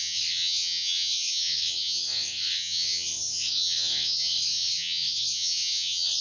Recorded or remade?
remade